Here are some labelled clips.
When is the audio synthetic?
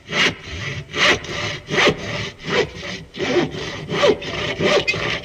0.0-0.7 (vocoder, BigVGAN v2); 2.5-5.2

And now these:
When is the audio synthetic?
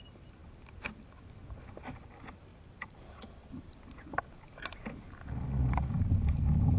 2.5-3.5 (vocoder, BigVGAN v2)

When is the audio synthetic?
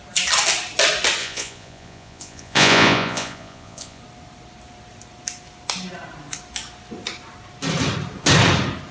1.2-4.0 (vocoder, Vocos)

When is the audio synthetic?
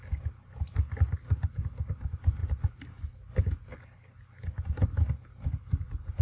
none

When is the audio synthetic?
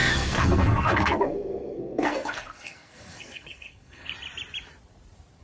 0.0-4.1 (codec, SNAC)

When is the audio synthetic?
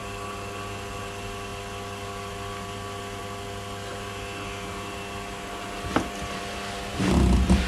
none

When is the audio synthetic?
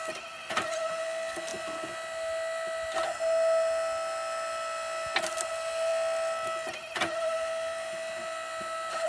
none